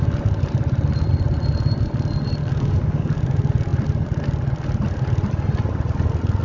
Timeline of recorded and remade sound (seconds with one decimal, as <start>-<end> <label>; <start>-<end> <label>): 0.0-2.4 recorded; 2.4-3.2 remade; 3.2-6.4 recorded

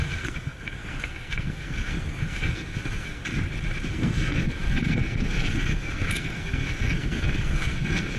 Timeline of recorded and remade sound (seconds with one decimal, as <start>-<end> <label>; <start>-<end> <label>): 0.0-3.2 remade; 3.2-3.9 recorded; 3.9-8.2 remade